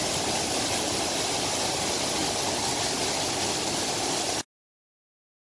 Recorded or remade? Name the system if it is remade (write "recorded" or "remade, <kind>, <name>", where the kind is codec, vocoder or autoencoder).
recorded